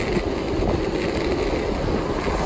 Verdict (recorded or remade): recorded